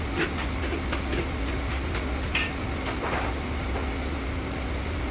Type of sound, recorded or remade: recorded